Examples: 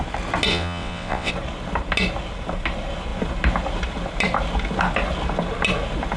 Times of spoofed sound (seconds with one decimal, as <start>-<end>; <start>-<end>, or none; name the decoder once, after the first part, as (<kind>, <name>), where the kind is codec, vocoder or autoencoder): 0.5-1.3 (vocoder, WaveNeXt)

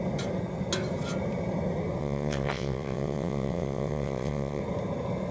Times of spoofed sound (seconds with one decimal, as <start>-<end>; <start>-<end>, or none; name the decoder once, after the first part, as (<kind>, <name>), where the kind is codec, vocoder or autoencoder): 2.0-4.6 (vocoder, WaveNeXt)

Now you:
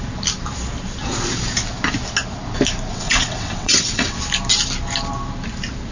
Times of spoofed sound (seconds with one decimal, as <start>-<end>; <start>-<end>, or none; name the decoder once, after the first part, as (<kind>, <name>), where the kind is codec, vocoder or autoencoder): 2.9-4.2 (vocoder, WaveNeXt)

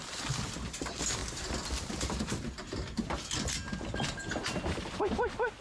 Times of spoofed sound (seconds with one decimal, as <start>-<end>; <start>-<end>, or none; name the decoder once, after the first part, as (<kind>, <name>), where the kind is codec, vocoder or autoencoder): none

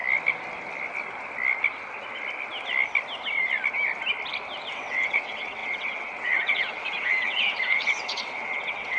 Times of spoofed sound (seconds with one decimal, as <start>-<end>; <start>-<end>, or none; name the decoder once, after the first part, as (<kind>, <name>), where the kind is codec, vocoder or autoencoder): 4.7-9.0 (vocoder, WaveNeXt)

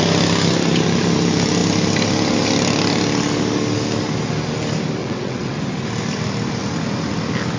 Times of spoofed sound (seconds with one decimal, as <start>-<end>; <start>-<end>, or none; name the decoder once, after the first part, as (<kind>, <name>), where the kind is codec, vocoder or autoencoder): 5.0-5.6 (vocoder, WaveNeXt)